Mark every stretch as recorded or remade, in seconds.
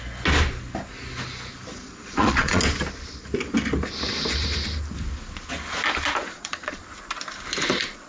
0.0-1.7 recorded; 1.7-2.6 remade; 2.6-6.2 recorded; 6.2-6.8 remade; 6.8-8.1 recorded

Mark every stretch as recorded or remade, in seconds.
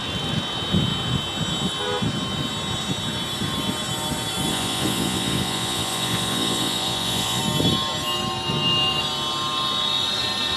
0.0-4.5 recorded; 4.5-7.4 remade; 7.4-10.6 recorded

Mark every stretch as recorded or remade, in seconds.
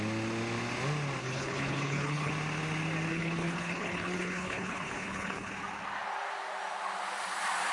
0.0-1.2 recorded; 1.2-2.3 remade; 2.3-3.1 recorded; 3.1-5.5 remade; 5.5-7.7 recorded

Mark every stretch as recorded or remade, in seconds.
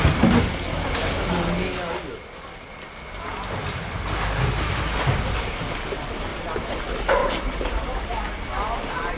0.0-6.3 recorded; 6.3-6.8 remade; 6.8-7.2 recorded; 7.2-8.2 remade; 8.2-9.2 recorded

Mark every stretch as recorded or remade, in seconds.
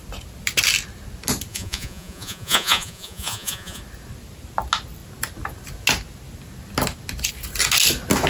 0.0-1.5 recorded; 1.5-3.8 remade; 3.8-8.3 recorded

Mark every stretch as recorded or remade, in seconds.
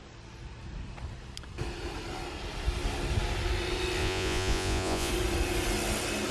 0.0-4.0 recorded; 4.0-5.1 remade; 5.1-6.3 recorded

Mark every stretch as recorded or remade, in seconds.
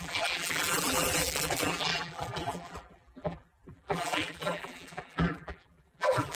0.0-6.3 remade